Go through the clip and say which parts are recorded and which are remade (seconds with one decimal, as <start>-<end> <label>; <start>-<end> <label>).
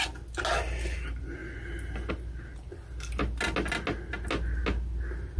0.0-5.4 recorded